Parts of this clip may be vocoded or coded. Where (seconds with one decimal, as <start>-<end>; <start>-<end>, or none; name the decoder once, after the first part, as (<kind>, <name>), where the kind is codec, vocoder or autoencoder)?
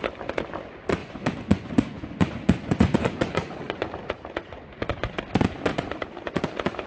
1.0-3.9 (vocoder, Vocos); 4.4-5.2; 5.7-6.4